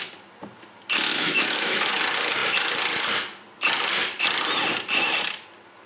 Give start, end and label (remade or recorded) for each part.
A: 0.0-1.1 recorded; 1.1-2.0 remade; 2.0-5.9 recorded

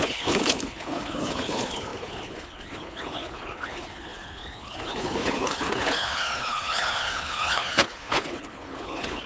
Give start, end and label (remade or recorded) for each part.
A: 0.0-9.3 remade

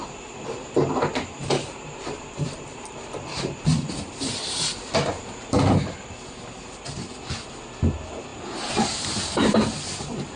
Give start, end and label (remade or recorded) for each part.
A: 0.0-1.4 recorded; 1.4-4.9 remade; 4.9-8.3 recorded; 8.3-10.4 remade

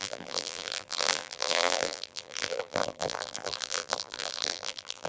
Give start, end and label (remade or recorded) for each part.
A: 0.0-5.1 remade

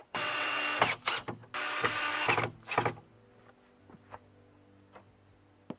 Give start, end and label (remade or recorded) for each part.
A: 0.0-0.6 remade; 0.6-5.8 recorded

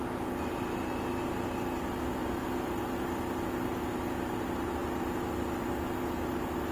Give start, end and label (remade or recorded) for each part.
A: 0.0-6.7 recorded

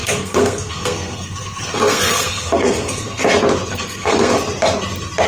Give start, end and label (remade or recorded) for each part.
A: 0.0-3.2 remade; 3.2-3.7 recorded; 3.7-4.3 remade; 4.3-5.3 recorded